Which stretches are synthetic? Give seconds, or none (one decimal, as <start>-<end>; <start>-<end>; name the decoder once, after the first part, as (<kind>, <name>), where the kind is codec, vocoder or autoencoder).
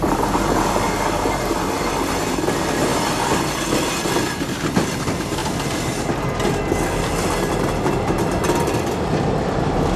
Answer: 0.0-2.9 (vocoder, BigVGAN v2); 3.6-5.4; 6.7-10.0